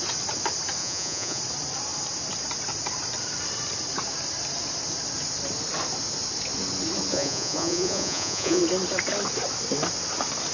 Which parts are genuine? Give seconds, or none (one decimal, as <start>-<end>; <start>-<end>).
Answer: 0.0-0.8; 1.4-7.1; 8.6-10.5